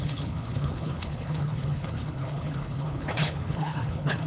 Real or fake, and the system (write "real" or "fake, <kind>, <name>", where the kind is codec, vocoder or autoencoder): fake, codec, HILCodec